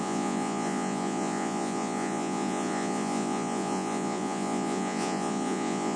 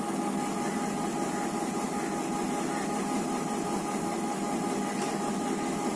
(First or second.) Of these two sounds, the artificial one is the first